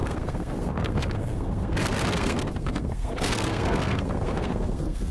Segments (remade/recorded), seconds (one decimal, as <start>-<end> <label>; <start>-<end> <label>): 0.0-5.1 remade

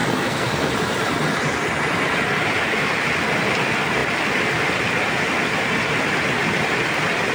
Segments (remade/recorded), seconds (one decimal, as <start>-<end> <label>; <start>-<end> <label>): 0.0-0.7 remade; 0.7-7.3 recorded

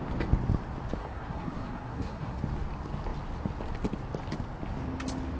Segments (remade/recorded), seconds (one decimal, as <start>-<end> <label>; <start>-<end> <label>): 0.0-1.0 recorded; 1.0-2.4 remade; 2.4-5.4 recorded

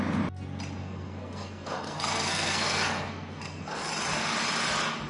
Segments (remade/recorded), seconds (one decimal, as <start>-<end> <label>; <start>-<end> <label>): 0.0-0.8 recorded; 0.8-3.9 remade; 3.9-5.1 recorded

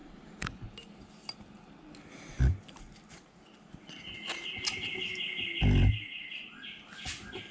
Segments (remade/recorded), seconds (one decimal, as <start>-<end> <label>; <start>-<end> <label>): 0.0-7.5 recorded

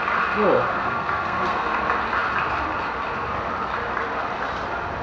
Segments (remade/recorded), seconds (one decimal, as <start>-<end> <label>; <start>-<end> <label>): 0.0-0.7 recorded; 0.7-1.8 remade; 1.8-5.0 recorded

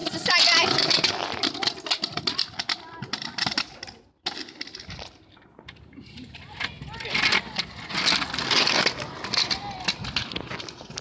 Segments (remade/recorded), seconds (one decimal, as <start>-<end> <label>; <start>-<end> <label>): 0.0-11.0 recorded

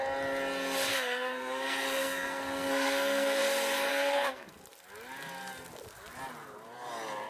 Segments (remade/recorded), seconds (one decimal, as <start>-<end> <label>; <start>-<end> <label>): 0.0-0.9 recorded; 0.9-3.4 remade; 3.4-3.9 recorded; 3.9-4.5 remade; 4.5-7.3 recorded